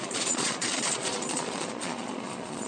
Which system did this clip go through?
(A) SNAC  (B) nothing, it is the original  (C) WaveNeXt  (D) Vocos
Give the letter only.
D